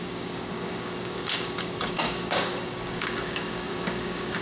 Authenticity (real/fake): fake